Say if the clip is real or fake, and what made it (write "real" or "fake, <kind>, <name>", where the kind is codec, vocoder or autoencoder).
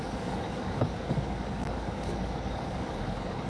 fake, codec, DAC